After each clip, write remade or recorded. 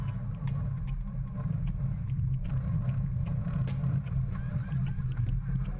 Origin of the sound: recorded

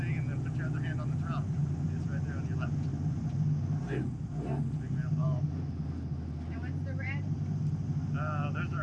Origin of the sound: recorded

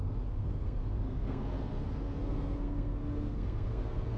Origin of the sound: remade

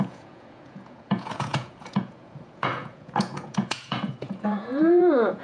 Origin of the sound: remade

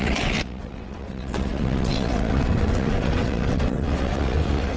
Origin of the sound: remade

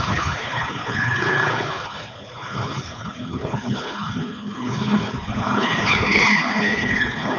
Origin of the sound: remade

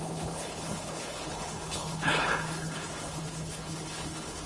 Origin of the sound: remade